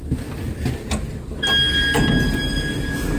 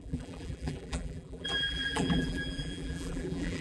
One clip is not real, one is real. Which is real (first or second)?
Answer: first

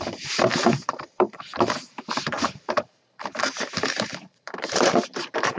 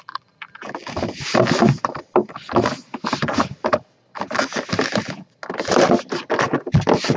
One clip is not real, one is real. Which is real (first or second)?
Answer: second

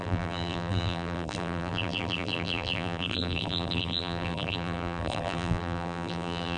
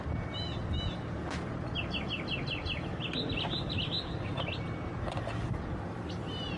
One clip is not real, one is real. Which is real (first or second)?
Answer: second